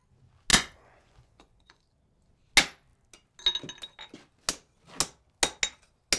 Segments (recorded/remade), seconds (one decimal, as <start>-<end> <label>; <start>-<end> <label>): 0.0-0.5 recorded; 0.5-1.8 remade; 1.8-6.2 recorded